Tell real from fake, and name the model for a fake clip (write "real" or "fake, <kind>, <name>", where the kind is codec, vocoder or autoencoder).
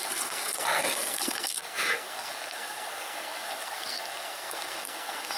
fake, codec, SNAC